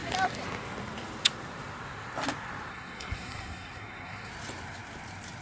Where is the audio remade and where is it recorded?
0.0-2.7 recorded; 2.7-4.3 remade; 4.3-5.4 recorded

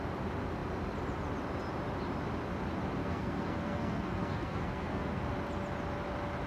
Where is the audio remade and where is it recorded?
0.0-3.0 recorded; 3.0-5.2 remade; 5.2-6.5 recorded